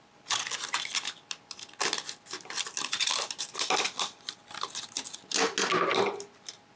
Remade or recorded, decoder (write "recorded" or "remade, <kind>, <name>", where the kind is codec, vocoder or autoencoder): recorded